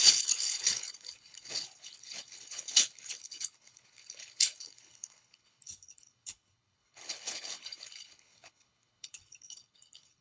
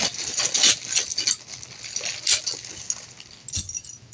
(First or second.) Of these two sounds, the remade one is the first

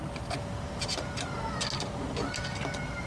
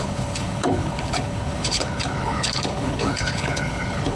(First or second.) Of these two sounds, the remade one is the second